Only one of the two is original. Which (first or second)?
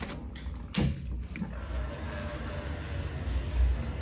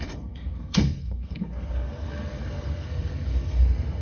first